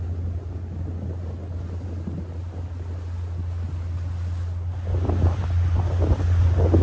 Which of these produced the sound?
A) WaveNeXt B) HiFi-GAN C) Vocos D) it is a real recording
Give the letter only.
D